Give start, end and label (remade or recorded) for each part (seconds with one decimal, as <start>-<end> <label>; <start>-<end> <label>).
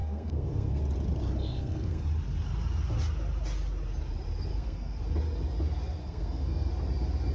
0.0-0.8 remade; 0.8-1.4 recorded; 1.4-2.0 remade; 2.0-4.5 recorded; 4.5-5.0 remade; 5.0-6.0 recorded; 6.0-6.7 remade; 6.7-7.3 recorded